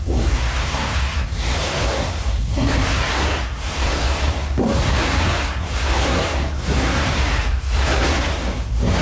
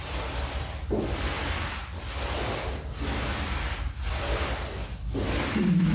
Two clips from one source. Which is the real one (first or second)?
second